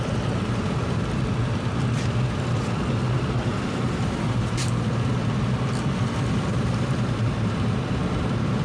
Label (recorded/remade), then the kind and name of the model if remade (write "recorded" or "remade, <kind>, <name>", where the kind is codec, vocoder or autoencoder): remade, vocoder, BigVGAN v2